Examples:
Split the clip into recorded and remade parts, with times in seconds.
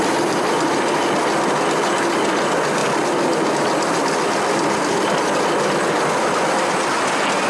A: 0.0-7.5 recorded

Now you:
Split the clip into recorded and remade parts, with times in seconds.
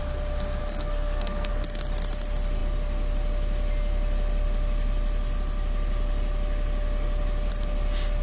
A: 0.0-0.6 recorded; 0.6-1.5 remade; 1.5-8.2 recorded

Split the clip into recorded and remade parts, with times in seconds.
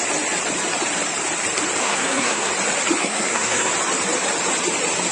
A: 0.0-1.8 recorded; 1.8-2.5 remade; 2.5-3.0 recorded; 3.0-3.7 remade; 3.7-5.1 recorded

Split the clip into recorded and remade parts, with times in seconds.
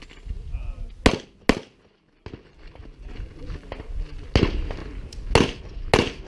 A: 0.0-6.3 recorded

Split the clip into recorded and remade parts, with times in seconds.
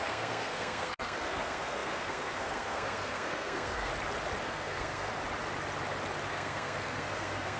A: 0.0-3.9 remade; 3.9-4.4 recorded; 4.4-5.1 remade; 5.1-6.3 recorded; 6.3-7.6 remade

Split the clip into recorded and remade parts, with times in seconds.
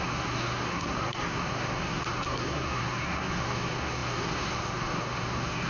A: 0.0-5.7 remade